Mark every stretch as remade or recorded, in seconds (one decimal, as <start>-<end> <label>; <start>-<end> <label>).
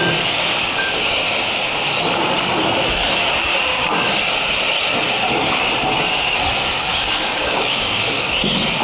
0.0-0.6 recorded; 0.6-1.3 remade; 1.3-3.7 recorded; 3.7-4.2 remade; 4.2-6.9 recorded; 6.9-8.0 remade; 8.0-8.8 recorded